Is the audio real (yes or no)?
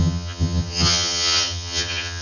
no